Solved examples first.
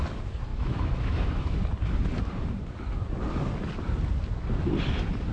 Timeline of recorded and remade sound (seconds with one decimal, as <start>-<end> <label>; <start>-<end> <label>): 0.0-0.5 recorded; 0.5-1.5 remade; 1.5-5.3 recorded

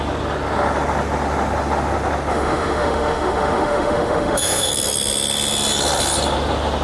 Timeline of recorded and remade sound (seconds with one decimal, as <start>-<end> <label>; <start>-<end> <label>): 0.0-2.3 recorded; 2.3-4.7 remade; 4.7-6.8 recorded

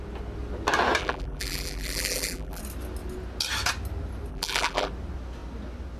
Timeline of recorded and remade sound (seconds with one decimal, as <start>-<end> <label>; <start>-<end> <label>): 0.0-1.0 recorded; 1.0-2.6 remade; 2.6-4.3 recorded; 4.3-4.9 remade; 4.9-6.0 recorded

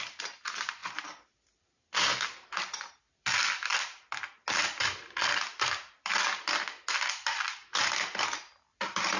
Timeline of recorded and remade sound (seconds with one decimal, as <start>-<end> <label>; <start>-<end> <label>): 0.0-9.2 recorded